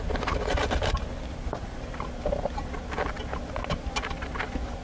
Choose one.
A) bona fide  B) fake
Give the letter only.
A